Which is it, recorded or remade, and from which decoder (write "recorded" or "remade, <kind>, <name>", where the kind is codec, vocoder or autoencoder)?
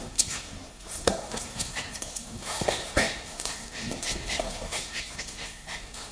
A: remade, codec, SNAC